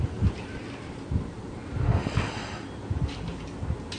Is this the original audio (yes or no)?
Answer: yes